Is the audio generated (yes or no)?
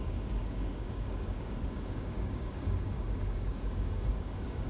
yes